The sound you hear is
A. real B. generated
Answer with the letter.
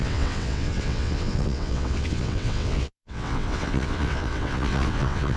B